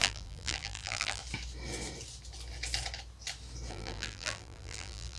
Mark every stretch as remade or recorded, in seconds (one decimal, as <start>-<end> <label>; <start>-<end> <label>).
0.0-1.2 remade; 1.2-3.7 recorded; 3.7-5.2 remade

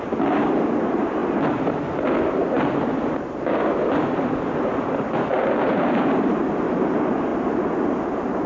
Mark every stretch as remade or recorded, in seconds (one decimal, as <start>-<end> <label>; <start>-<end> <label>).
0.0-1.2 remade; 1.2-3.2 recorded; 3.2-3.6 remade; 3.6-4.4 recorded; 4.4-7.3 remade; 7.3-7.9 recorded; 7.9-8.5 remade

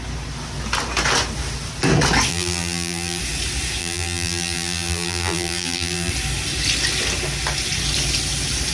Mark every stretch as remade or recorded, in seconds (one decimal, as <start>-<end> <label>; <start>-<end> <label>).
0.0-2.3 recorded; 2.3-3.2 remade; 3.2-3.8 recorded; 3.8-6.1 remade; 6.1-8.7 recorded

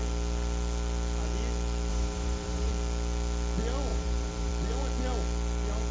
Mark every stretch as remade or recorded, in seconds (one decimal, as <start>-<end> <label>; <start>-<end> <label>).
0.0-1.9 recorded; 1.9-2.7 remade; 2.7-3.9 recorded; 3.9-4.5 remade; 4.5-5.9 recorded

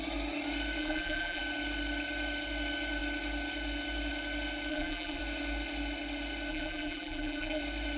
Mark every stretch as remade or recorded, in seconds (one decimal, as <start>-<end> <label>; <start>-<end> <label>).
0.0-0.8 recorded; 0.8-1.4 remade; 1.4-4.7 recorded; 4.7-5.2 remade; 5.2-6.5 recorded; 6.5-7.6 remade; 7.6-8.0 recorded

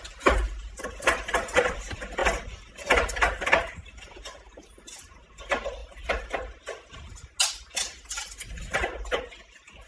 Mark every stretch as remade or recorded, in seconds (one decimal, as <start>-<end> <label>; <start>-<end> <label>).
0.0-2.2 remade; 2.2-3.4 recorded; 3.4-5.8 remade; 5.8-9.9 recorded

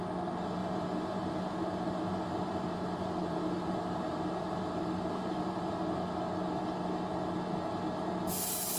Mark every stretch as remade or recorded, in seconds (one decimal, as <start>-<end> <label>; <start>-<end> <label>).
0.0-0.6 recorded; 0.6-5.7 remade; 5.7-8.8 recorded

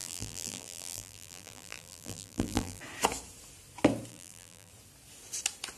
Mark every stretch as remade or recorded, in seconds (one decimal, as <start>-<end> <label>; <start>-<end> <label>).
0.0-2.8 remade; 2.8-4.1 recorded; 4.1-4.7 remade; 4.7-5.8 recorded